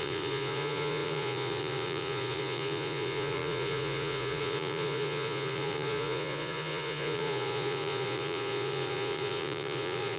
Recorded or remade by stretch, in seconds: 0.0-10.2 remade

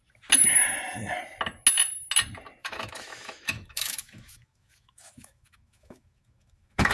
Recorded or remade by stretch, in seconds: 0.0-2.6 recorded; 2.6-6.9 remade

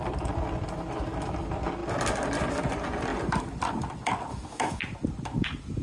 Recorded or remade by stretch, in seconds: 0.0-4.3 recorded; 4.3-4.8 remade; 4.8-5.8 recorded

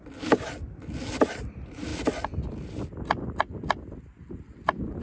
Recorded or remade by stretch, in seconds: 0.0-5.0 recorded

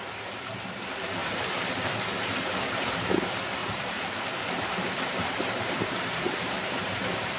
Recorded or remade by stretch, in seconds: 0.0-1.2 recorded; 1.2-2.0 remade; 2.0-3.6 recorded; 3.6-7.0 remade; 7.0-7.4 recorded

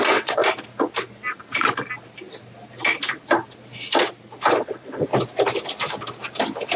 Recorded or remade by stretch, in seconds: 0.0-0.4 remade; 0.4-4.5 recorded; 4.5-5.1 remade; 5.1-6.8 recorded

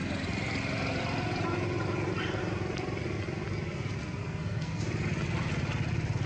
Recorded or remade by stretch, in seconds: 0.0-4.2 recorded; 4.2-4.8 remade; 4.8-6.3 recorded

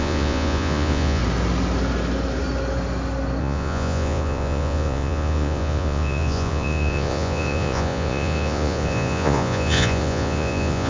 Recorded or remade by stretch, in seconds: 0.0-1.2 remade; 1.2-3.4 recorded; 3.4-10.9 remade